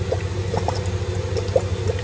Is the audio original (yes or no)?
yes